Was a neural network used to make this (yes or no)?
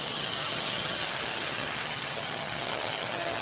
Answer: yes